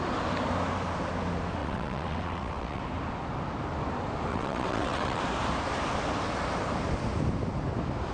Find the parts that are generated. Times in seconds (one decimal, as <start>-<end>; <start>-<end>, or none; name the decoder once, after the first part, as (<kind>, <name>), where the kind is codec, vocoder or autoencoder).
1.6-2.8 (vocoder, WaveNeXt); 4.3-5.2